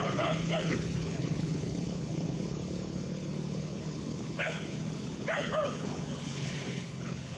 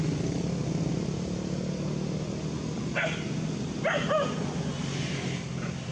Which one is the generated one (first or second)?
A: first